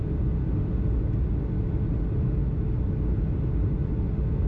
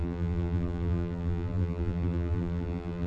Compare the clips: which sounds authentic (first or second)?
first